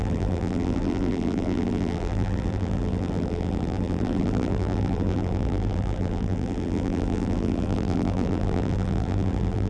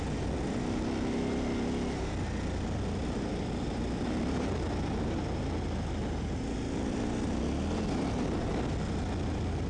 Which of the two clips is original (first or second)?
second